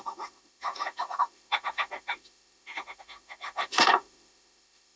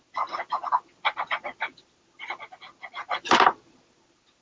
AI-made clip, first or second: first